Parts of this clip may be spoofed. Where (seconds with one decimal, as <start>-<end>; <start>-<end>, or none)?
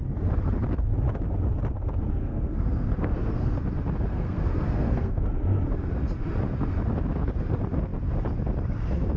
2.2-3.6; 4.1-5.2